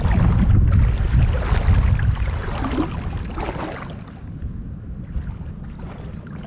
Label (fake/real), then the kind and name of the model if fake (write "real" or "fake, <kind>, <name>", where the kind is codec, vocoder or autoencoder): real